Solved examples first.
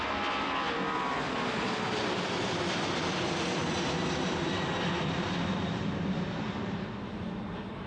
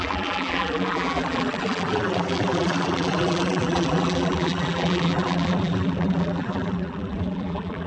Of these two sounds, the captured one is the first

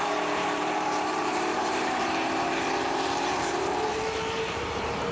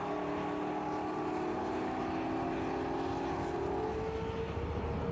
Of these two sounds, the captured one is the second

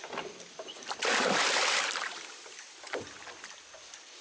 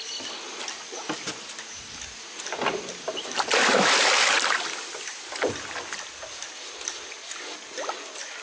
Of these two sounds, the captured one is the second